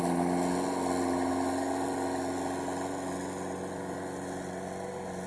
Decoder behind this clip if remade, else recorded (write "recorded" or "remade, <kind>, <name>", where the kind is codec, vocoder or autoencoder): recorded